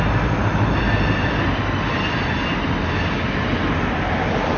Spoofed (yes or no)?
no